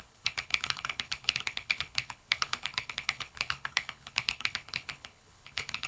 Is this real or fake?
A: fake